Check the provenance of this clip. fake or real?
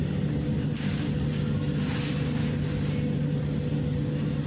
real